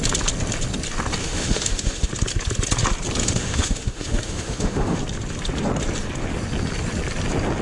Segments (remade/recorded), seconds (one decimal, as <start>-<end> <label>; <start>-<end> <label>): 0.0-1.2 recorded; 1.2-2.1 remade; 2.1-3.2 recorded; 3.2-5.0 remade; 5.0-7.6 recorded